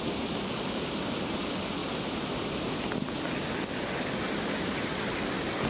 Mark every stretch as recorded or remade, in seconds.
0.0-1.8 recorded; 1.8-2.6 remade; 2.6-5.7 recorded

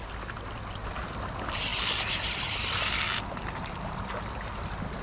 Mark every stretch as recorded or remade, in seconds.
0.0-5.0 recorded

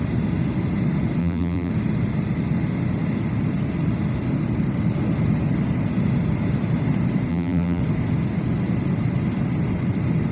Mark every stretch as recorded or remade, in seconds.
0.0-1.2 recorded; 1.2-1.7 remade; 1.7-7.3 recorded; 7.3-7.8 remade; 7.8-10.3 recorded

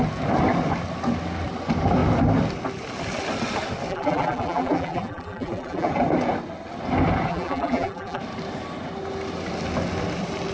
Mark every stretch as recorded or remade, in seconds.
0.0-3.9 recorded; 3.9-5.9 remade; 5.9-7.3 recorded; 7.3-8.2 remade; 8.2-10.5 recorded

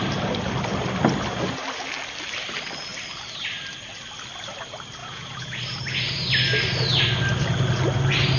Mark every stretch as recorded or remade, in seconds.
0.0-5.0 recorded; 5.0-5.6 remade; 5.6-8.4 recorded

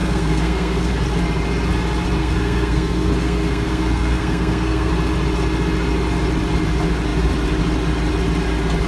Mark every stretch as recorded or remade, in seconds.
0.0-0.9 remade; 0.9-2.2 recorded; 2.2-4.9 remade; 4.9-8.9 recorded

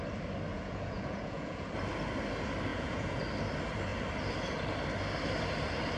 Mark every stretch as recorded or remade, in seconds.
0.0-0.5 recorded; 0.5-1.7 remade; 1.7-2.7 recorded; 2.7-3.2 remade; 3.2-6.0 recorded